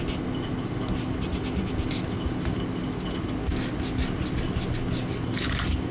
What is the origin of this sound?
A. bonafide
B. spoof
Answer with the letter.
A